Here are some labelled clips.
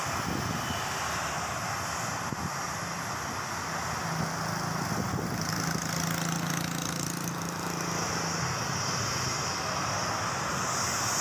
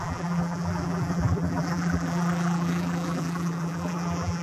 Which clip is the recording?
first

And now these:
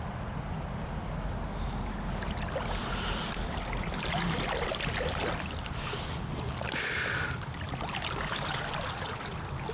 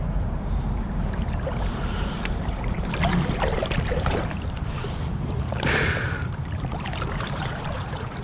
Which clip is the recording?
first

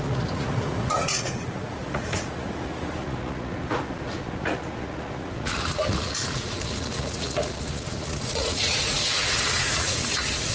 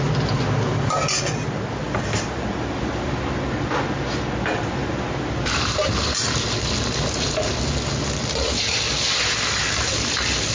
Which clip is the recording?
second